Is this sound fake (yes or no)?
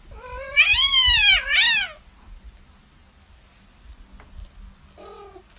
no